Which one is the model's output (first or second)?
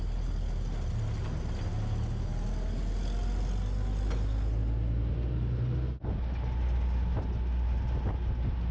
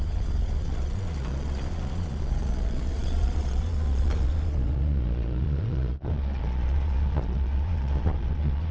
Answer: second